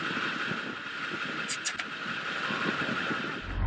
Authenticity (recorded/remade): recorded